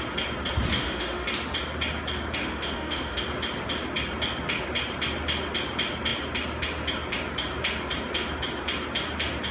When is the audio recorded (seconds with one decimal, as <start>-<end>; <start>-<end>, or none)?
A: 0.0-0.8; 1.3-2.4; 3.2-9.5